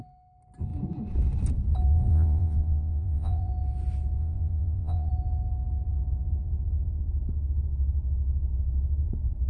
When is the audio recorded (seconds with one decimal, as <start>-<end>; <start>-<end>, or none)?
0.0-2.1; 3.5-4.2; 5.1-9.5